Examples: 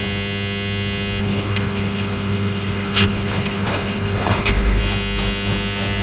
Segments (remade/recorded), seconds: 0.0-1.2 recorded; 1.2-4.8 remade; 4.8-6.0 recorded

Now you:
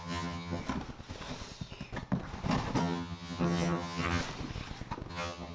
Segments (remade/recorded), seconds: 0.0-0.6 remade; 0.6-2.8 recorded; 2.8-4.2 remade; 4.2-5.1 recorded; 5.1-5.5 remade

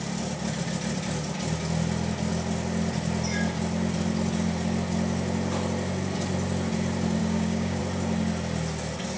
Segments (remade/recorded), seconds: 0.0-7.2 recorded; 7.2-7.8 remade; 7.8-9.2 recorded

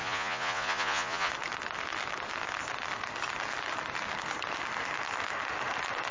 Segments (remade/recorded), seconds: 0.0-1.3 remade; 1.3-6.1 recorded

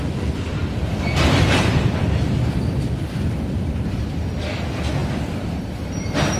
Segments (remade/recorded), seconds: 0.0-0.5 recorded; 0.5-2.6 remade; 2.6-3.6 recorded; 3.6-4.2 remade; 4.2-5.0 recorded; 5.0-5.6 remade; 5.6-6.4 recorded